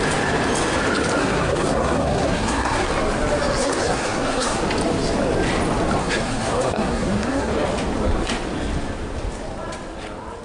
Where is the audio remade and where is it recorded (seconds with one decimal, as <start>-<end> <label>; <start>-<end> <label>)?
0.0-1.2 recorded; 1.2-2.9 remade; 2.9-3.6 recorded; 3.6-4.6 remade; 4.6-6.0 recorded; 6.0-7.5 remade; 7.5-10.4 recorded